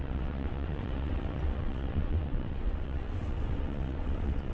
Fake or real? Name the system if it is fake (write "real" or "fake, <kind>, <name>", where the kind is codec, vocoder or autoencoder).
fake, vocoder, WaveNeXt